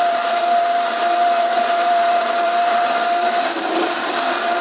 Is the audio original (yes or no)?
no